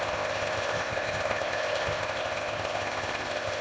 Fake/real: fake